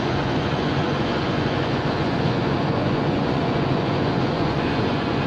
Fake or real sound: fake